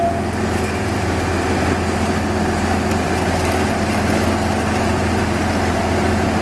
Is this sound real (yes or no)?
yes